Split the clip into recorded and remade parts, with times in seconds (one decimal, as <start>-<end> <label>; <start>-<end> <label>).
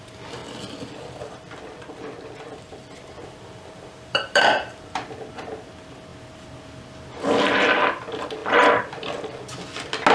0.0-0.4 recorded; 0.4-5.2 remade; 5.2-8.4 recorded; 8.4-9.4 remade; 9.4-10.1 recorded